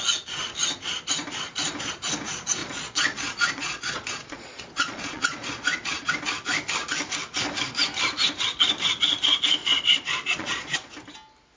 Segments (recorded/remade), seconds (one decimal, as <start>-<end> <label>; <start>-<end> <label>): 0.0-2.6 recorded; 2.6-6.1 remade; 6.1-9.6 recorded; 9.6-10.9 remade; 10.9-11.6 recorded